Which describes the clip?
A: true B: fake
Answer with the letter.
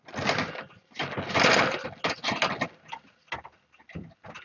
A